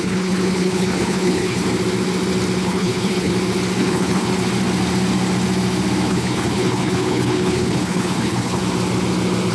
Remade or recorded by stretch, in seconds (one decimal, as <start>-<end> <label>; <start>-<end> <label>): 0.0-1.6 remade; 1.6-2.6 recorded; 2.6-3.3 remade; 3.3-3.8 recorded; 3.8-4.3 remade; 4.3-6.1 recorded; 6.1-8.6 remade; 8.6-9.5 recorded